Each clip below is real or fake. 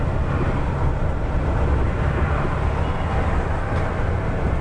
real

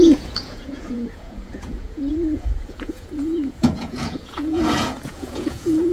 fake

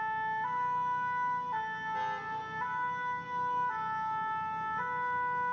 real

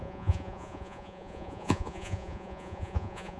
fake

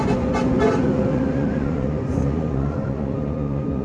fake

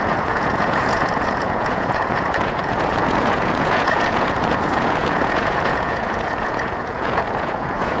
fake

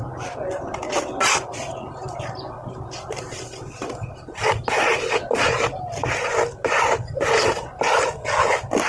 real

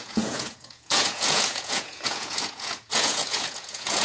fake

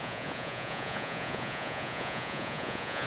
fake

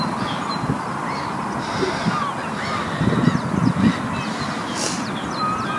real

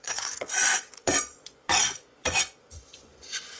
fake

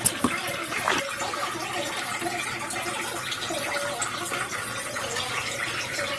real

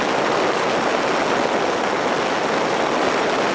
real